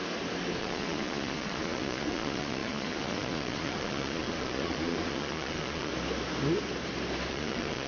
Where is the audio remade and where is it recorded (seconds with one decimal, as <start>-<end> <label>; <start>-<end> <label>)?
0.0-0.6 recorded; 0.6-5.9 remade; 5.9-7.3 recorded; 7.3-7.9 remade